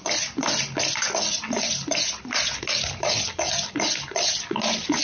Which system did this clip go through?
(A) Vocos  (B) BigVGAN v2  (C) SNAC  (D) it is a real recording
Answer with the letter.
D